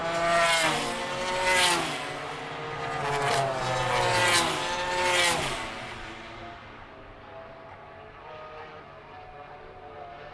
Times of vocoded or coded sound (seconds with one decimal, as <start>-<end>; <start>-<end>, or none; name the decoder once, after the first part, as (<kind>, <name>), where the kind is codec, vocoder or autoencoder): none